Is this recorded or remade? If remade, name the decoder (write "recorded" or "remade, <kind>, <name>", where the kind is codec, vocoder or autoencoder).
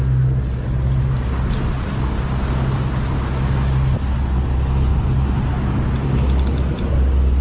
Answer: recorded